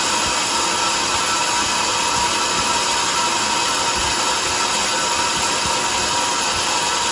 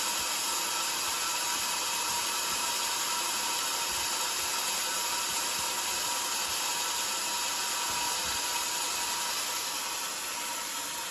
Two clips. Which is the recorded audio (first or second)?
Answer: first